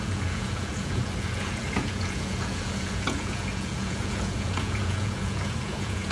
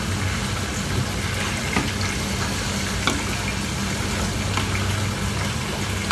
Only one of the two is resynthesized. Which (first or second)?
first